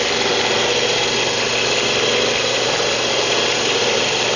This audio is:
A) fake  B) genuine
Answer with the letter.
B